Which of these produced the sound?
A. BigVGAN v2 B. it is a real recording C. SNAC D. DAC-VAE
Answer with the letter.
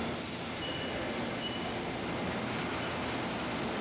B